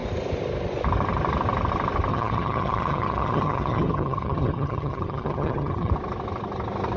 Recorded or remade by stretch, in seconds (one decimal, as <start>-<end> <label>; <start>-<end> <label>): 0.0-2.1 recorded; 2.1-5.9 remade; 5.9-7.0 recorded